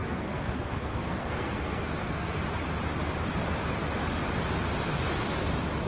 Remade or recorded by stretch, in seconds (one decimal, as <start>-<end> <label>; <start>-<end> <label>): 0.0-2.4 remade; 2.4-5.9 recorded